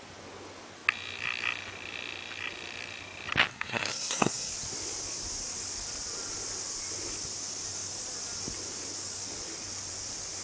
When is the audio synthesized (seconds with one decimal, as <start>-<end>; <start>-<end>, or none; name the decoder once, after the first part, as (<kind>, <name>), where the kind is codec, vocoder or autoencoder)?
3.5-4.5 (codec, SNAC)